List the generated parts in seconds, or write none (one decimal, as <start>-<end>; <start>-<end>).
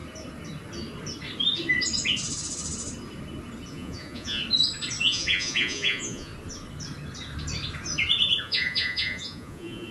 3.7-4.4; 5.0-6.3; 8.4-9.9